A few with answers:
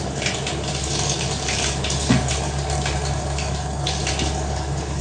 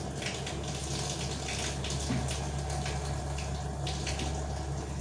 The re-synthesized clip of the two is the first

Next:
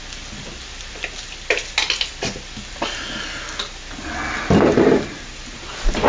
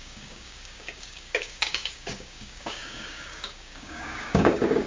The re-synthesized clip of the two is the second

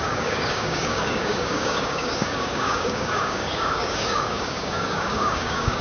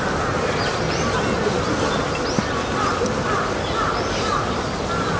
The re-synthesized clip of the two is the first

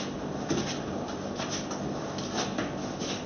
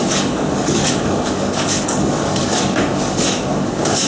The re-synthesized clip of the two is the second